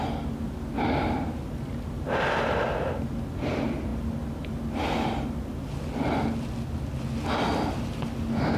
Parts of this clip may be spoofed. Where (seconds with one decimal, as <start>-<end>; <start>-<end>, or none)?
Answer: none